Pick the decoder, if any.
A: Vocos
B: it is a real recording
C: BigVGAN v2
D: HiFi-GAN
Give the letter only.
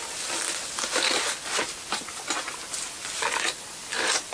B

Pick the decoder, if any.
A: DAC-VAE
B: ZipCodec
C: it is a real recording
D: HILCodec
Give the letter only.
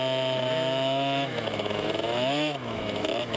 A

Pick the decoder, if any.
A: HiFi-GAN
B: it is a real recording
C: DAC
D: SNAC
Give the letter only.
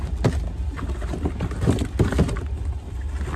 B